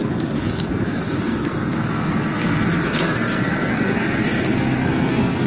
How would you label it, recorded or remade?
remade